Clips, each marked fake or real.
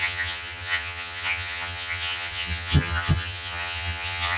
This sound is fake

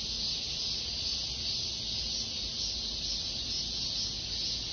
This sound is real